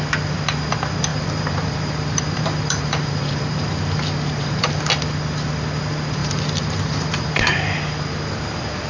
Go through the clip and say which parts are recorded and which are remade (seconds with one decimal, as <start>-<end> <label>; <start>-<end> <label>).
0.0-1.1 recorded; 1.1-4.9 remade; 4.9-6.2 recorded; 6.2-7.3 remade; 7.3-8.9 recorded